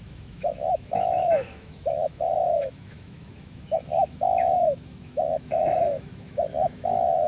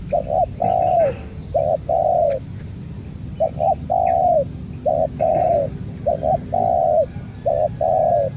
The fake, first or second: first